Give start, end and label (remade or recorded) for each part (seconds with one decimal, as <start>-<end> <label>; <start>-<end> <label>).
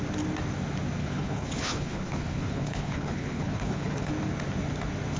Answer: 0.0-1.0 recorded; 1.0-4.1 remade; 4.1-5.2 recorded